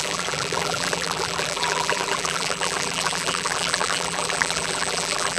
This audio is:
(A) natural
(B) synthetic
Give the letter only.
B